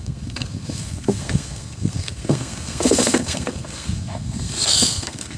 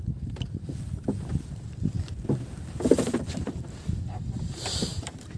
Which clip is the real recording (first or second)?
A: second